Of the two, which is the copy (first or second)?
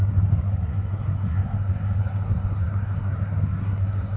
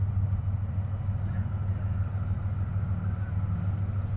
first